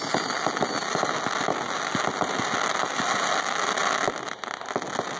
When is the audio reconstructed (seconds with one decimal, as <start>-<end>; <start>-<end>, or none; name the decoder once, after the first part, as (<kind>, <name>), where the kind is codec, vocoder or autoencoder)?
none